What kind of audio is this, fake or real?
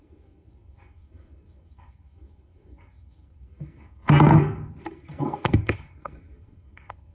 fake